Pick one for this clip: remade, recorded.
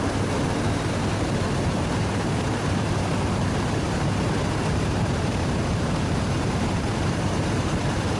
remade